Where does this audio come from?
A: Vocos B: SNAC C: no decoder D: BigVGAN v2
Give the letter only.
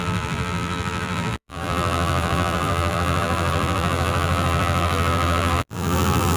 D